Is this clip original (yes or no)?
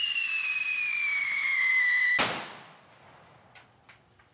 yes